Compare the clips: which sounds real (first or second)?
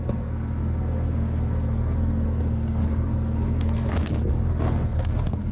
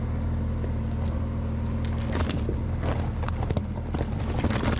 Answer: second